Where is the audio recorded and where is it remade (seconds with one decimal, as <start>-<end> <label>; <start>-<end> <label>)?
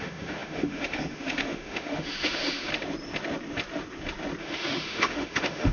0.0-2.7 remade; 2.7-4.4 recorded; 4.4-5.7 remade